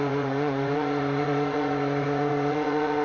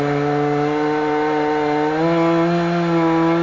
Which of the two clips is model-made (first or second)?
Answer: first